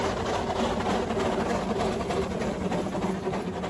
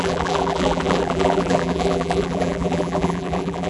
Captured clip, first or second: first